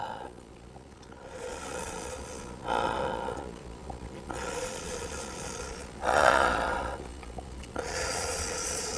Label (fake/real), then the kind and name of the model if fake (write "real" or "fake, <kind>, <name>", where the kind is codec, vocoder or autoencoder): fake, vocoder, Vocos